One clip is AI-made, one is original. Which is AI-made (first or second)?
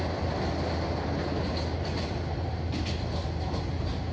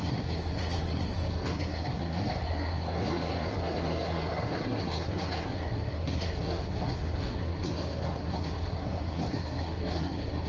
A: second